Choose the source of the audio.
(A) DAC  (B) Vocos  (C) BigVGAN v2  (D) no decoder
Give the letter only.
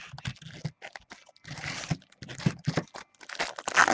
D